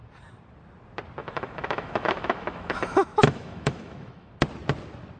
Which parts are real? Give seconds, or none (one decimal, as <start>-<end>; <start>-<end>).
0.0-1.2; 4.3-5.2